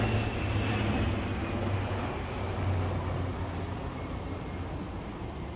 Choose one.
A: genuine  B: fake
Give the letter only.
A